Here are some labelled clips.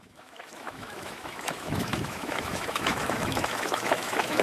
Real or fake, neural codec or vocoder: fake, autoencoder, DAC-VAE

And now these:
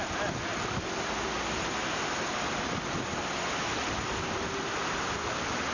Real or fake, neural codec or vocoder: real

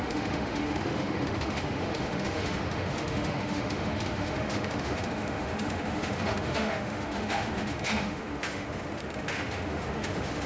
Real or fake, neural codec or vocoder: fake, autoencoder, DAC-VAE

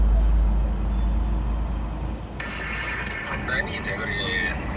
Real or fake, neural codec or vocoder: real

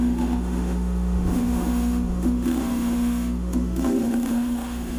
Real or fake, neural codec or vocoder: fake, autoencoder, DAC-VAE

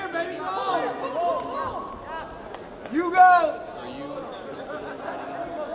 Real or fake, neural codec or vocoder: real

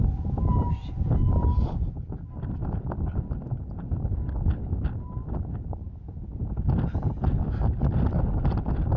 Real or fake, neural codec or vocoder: real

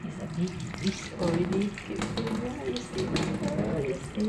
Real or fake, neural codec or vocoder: real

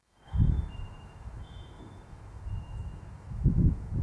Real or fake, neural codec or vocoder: fake, autoencoder, DAC-VAE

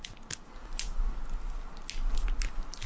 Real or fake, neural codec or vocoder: real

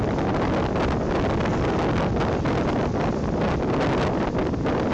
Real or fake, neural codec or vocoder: real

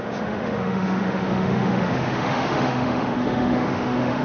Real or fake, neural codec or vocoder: fake, autoencoder, DAC-VAE